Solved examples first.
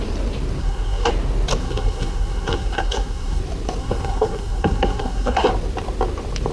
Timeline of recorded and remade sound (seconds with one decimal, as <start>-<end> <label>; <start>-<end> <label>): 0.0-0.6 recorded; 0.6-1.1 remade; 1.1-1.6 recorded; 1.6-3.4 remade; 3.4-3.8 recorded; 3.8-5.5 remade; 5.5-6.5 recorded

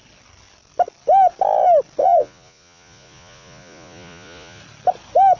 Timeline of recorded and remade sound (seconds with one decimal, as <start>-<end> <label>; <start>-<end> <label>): 0.0-2.0 recorded; 2.0-4.6 remade; 4.6-5.4 recorded

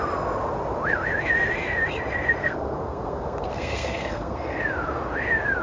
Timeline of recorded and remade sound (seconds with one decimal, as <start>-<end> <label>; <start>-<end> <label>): 0.0-2.4 recorded; 2.4-4.6 remade; 4.6-5.6 recorded

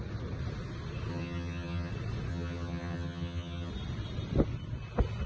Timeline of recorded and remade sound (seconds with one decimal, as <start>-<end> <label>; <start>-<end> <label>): 0.0-1.1 recorded; 1.1-1.9 remade; 1.9-2.3 recorded; 2.3-3.7 remade; 3.7-5.3 recorded

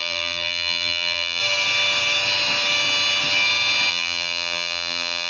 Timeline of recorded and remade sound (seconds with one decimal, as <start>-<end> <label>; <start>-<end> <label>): 0.0-1.4 remade; 1.4-3.9 recorded; 3.9-5.3 remade

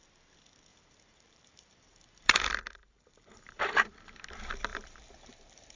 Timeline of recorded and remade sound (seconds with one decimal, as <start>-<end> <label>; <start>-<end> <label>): 0.0-0.7 recorded; 0.7-4.2 remade; 4.2-4.7 recorded; 4.7-5.8 remade

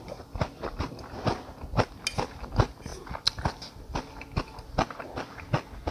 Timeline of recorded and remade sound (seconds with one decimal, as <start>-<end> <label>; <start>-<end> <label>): 0.0-5.9 recorded